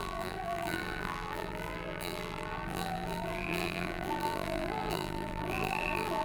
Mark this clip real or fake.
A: fake